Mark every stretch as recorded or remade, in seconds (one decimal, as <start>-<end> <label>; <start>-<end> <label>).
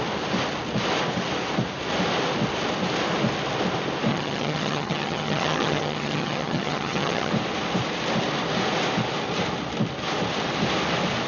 0.0-4.1 recorded; 4.1-7.3 remade; 7.3-11.3 recorded